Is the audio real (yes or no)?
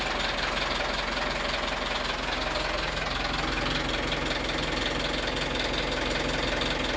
yes